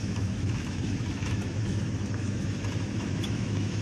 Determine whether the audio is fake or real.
fake